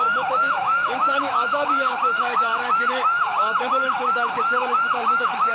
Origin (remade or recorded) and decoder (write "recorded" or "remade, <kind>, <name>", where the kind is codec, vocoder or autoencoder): remade, autoencoder, DAC-VAE